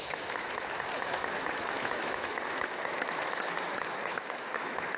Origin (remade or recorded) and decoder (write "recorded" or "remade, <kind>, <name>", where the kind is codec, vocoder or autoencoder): remade, autoencoder, DAC-VAE